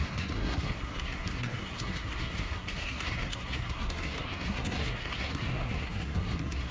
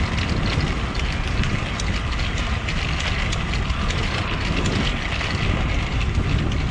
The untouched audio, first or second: second